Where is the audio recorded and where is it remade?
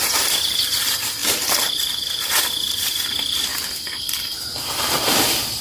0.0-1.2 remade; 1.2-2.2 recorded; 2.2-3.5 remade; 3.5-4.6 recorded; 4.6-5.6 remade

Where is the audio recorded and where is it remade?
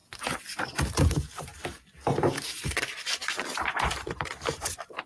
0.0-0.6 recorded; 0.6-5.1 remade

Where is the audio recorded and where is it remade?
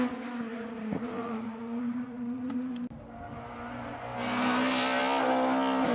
0.0-0.5 recorded; 0.5-2.7 remade; 2.7-5.9 recorded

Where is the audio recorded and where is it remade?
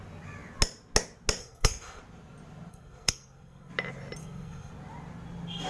0.0-1.4 recorded; 1.4-2.0 remade; 2.0-2.7 recorded; 2.7-3.7 remade; 3.7-4.2 recorded; 4.2-4.7 remade; 4.7-5.7 recorded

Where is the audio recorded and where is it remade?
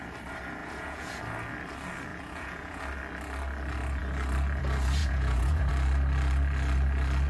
0.0-0.6 recorded; 0.6-1.2 remade; 1.2-2.1 recorded; 2.1-2.8 remade; 2.8-5.0 recorded; 5.0-5.7 remade; 5.7-7.3 recorded